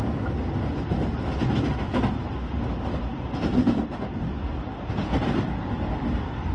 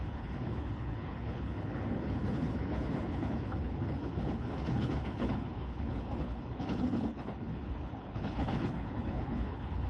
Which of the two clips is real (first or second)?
first